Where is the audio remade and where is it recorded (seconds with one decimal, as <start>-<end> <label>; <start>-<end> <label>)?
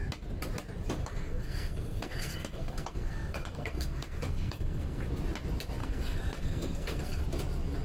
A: 0.0-1.0 recorded; 1.0-5.1 remade; 5.1-5.8 recorded; 5.8-7.2 remade; 7.2-7.8 recorded